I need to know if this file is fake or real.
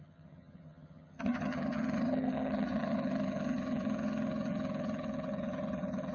fake